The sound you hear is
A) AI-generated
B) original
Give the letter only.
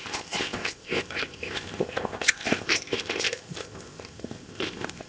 A